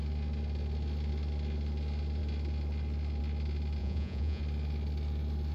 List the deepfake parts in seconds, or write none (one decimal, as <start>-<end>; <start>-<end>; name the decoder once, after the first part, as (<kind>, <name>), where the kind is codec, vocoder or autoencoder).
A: 3.8-4.4 (vocoder, Vocos)